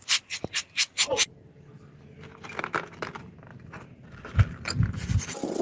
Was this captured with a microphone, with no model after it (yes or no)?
yes